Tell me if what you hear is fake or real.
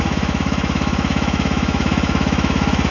fake